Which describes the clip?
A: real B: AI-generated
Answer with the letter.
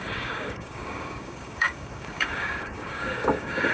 B